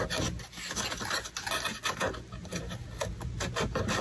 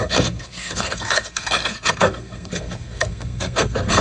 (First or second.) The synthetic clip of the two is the second